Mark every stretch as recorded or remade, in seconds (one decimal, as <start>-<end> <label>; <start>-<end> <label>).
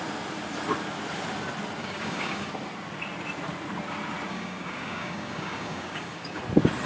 0.0-1.8 recorded; 1.8-2.5 remade; 2.5-4.3 recorded; 4.3-6.4 remade; 6.4-6.9 recorded